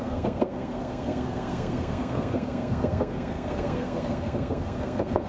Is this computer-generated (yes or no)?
yes